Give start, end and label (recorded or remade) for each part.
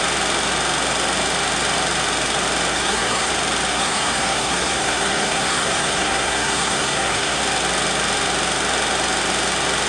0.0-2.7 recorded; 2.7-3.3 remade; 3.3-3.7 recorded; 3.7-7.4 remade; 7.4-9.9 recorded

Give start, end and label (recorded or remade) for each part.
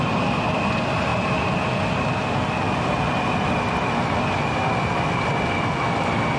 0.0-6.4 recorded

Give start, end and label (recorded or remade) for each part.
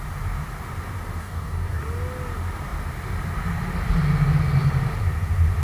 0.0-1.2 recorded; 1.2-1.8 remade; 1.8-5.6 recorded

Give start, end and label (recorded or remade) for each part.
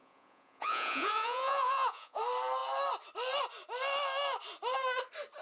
0.0-2.2 remade; 2.2-5.4 recorded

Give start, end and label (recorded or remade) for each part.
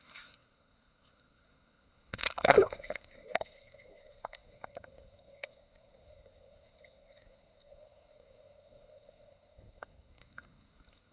0.0-11.1 remade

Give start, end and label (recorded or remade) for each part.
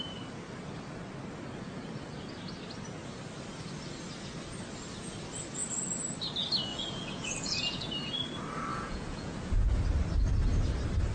0.0-6.7 recorded; 6.7-7.9 remade; 7.9-8.7 recorded; 8.7-9.8 remade; 9.8-11.1 recorded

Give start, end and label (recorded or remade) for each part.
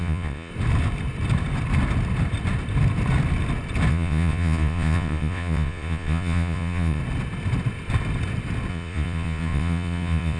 0.0-0.5 remade; 0.5-3.9 recorded; 3.9-7.0 remade; 7.0-8.7 recorded; 8.7-10.4 remade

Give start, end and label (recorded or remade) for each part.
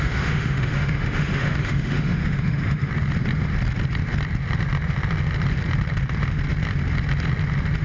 0.0-2.9 remade; 2.9-7.8 recorded